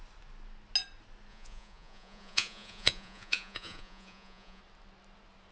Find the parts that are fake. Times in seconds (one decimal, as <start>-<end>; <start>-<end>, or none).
1.3-4.6